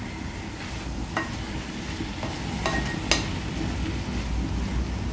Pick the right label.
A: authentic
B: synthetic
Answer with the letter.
A